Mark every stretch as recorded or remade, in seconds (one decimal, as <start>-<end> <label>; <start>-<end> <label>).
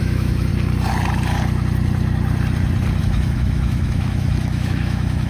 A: 0.0-0.5 remade; 0.5-3.0 recorded; 3.0-5.3 remade